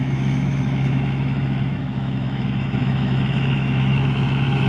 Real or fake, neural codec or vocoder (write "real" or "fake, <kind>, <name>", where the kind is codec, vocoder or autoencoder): fake, autoencoder, DAC-VAE